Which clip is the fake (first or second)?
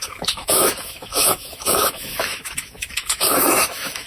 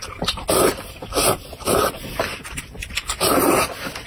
first